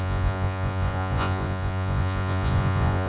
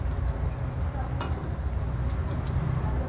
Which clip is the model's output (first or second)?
first